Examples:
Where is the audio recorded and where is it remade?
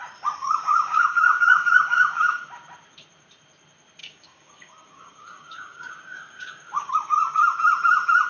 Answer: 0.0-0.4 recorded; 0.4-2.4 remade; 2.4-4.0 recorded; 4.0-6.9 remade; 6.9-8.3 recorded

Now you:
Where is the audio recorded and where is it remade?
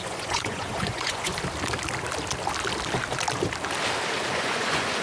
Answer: 0.0-1.3 remade; 1.3-4.3 recorded; 4.3-5.0 remade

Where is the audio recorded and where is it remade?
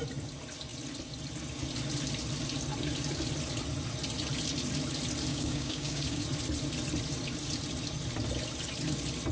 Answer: 0.0-5.3 recorded; 5.3-6.2 remade; 6.2-9.3 recorded